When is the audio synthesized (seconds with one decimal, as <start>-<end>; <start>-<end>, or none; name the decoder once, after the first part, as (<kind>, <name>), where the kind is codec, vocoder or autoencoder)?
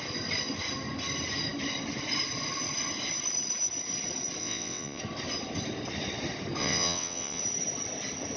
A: 4.4-5.0 (vocoder, WaveNeXt); 6.6-7.4